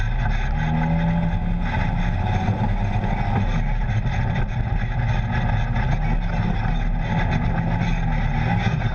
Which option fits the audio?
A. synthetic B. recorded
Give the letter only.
B